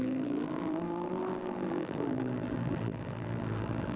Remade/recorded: remade